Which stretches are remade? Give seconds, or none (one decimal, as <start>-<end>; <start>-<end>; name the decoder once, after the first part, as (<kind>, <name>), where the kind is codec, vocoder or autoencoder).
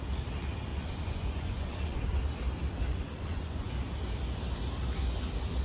0.7-2.2 (vocoder, Vocos); 2.9-3.7